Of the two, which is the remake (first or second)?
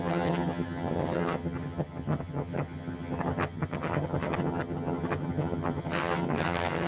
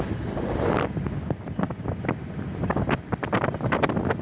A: first